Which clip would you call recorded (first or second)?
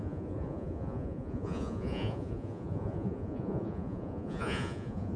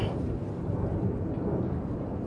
second